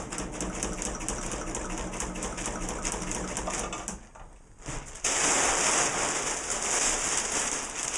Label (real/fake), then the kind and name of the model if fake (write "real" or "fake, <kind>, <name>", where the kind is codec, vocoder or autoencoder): real